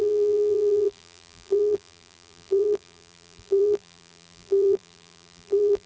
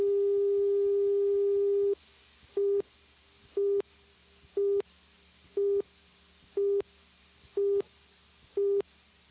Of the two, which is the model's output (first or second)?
first